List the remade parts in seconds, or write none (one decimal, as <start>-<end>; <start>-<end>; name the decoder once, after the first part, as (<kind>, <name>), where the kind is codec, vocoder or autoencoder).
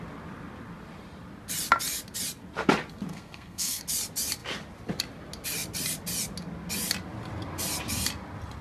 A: 3.1-3.8 (codec, SNAC)